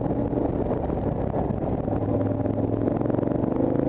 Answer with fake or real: real